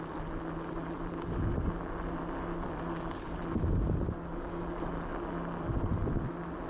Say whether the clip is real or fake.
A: real